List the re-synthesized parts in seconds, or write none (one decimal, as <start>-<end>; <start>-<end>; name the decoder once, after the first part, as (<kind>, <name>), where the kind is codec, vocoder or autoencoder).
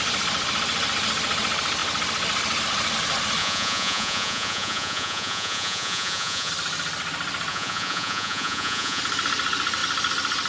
3.4-6.5 (vocoder, Vocos); 7.5-9.0